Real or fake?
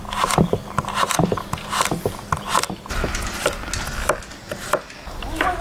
real